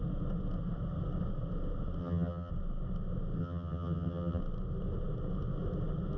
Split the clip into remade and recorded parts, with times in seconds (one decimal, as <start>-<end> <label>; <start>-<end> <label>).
0.0-2.0 recorded; 2.0-2.5 remade; 2.5-3.4 recorded; 3.4-4.4 remade; 4.4-6.2 recorded